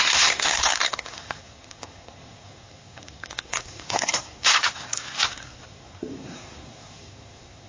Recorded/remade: remade